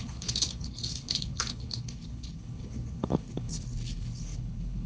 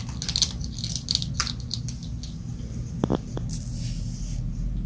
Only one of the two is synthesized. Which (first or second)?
first